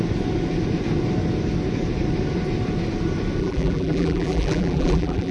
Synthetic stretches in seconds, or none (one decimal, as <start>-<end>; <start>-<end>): 3.4-5.3